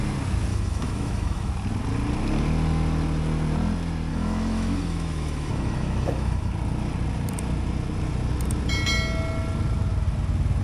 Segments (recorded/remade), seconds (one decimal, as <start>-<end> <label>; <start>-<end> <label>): 0.0-0.5 recorded; 0.5-1.5 remade; 1.5-4.1 recorded; 4.1-6.5 remade; 6.5-10.6 recorded